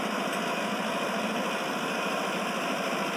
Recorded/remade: recorded